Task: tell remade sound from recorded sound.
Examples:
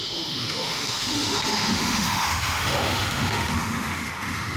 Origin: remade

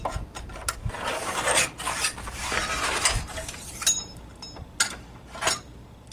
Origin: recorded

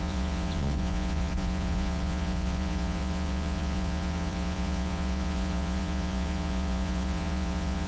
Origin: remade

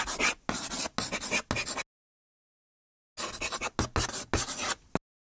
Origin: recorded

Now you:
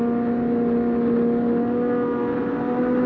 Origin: recorded